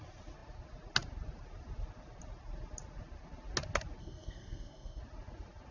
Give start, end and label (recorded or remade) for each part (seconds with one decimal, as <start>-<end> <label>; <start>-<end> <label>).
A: 0.0-4.0 recorded; 4.0-5.0 remade; 5.0-5.7 recorded